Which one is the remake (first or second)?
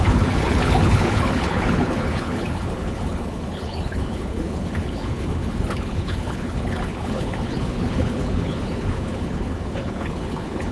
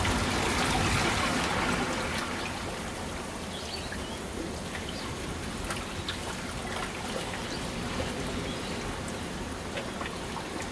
first